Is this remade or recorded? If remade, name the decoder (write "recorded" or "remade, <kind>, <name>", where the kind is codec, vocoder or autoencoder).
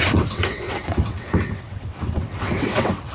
remade, vocoder, WaveNeXt